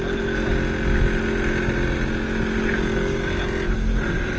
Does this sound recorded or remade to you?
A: recorded